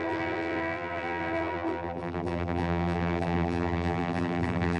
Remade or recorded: remade